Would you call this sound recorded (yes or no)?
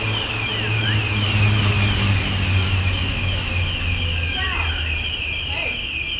yes